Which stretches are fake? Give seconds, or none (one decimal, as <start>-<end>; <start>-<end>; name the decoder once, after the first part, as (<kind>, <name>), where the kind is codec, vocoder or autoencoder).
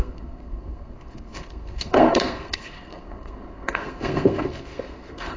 0.0-5.4 (codec, SNAC)